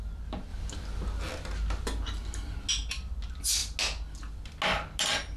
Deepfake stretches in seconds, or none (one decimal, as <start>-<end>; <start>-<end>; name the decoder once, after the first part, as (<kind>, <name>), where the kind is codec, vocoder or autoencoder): none